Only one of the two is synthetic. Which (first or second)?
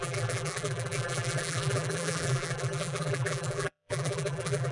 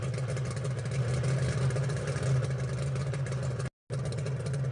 first